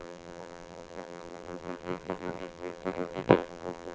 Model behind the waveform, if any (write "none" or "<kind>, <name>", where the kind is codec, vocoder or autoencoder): vocoder, BigVGAN v2